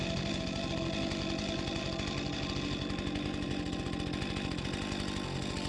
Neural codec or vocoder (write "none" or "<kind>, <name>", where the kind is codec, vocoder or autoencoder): none